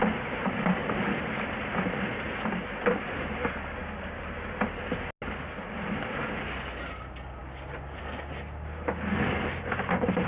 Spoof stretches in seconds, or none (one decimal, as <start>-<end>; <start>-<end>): none